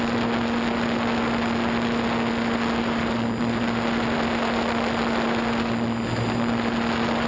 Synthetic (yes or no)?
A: no